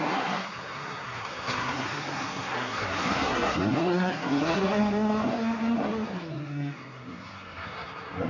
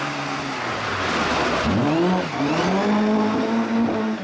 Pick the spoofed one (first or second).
first